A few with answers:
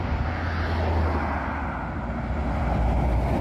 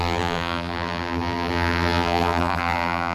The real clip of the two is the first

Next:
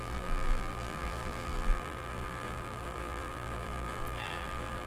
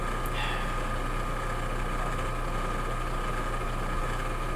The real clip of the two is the second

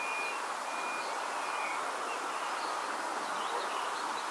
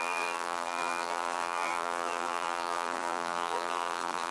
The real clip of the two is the first